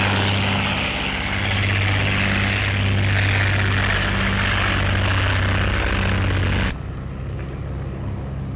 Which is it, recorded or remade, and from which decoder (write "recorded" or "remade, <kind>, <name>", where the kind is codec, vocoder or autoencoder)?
recorded